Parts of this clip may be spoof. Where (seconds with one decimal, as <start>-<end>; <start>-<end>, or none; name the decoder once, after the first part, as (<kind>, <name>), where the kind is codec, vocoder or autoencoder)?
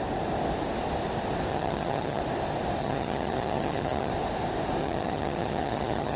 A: 1.5-2.2 (vocoder, HiFi-GAN); 2.8-4.1; 4.8-6.2